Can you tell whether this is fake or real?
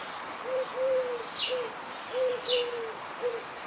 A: fake